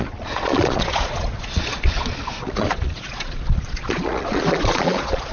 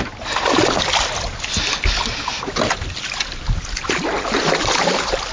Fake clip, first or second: first